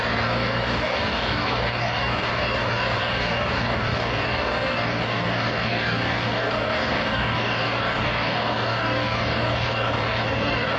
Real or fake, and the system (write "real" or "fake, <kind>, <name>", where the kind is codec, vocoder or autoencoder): fake, codec, DAC